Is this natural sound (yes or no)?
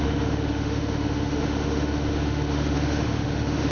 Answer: no